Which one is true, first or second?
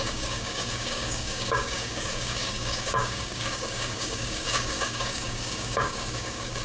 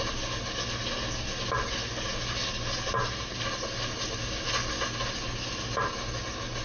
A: second